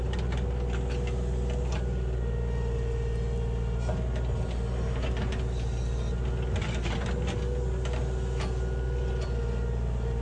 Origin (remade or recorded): recorded